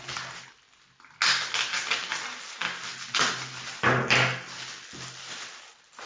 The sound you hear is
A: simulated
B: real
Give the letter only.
B